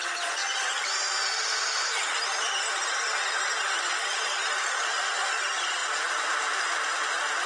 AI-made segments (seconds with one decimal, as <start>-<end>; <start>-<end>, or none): none